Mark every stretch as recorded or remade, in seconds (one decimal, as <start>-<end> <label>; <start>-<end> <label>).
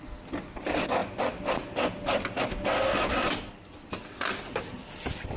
0.0-5.4 recorded